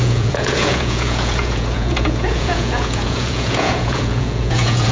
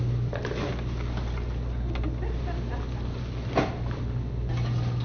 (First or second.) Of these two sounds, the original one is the second